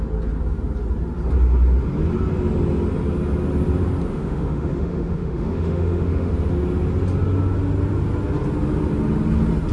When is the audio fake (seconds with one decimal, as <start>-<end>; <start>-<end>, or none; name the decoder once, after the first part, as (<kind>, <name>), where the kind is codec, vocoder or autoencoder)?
4.1-6.3 (autoencoder, DAC-VAE)